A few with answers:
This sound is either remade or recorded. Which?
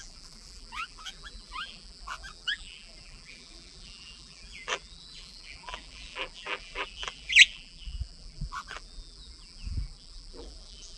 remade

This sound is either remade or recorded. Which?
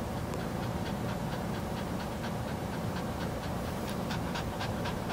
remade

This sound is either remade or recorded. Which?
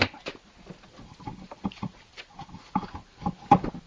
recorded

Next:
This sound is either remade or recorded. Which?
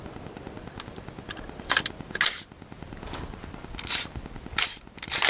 recorded